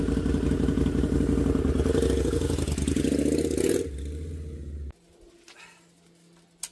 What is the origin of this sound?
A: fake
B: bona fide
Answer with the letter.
B